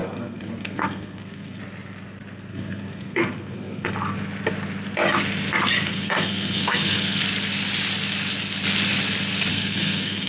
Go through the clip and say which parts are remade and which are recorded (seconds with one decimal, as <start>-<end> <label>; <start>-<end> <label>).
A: 0.0-1.6 remade; 1.6-2.5 recorded; 2.5-3.9 remade; 3.9-5.9 recorded; 5.9-7.2 remade; 7.2-9.5 recorded; 9.5-10.3 remade